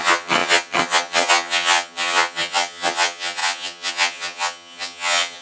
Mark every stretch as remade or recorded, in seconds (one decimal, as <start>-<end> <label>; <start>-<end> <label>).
0.0-5.4 remade